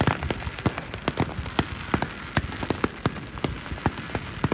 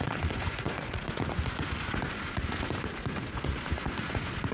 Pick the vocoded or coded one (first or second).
second